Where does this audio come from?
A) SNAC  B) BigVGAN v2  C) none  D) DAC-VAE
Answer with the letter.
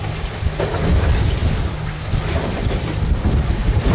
C